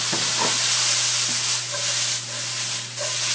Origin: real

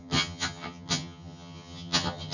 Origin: fake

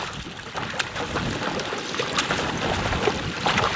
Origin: real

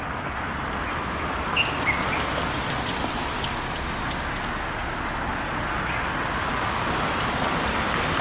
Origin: real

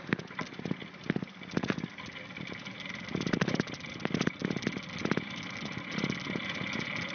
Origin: real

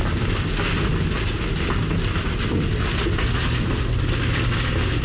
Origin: real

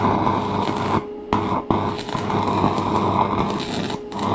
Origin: real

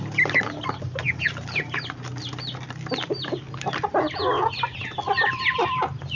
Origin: real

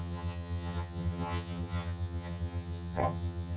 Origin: fake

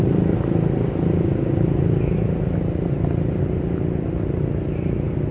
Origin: real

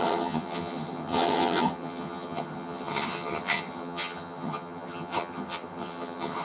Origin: fake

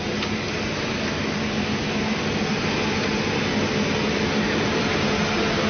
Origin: real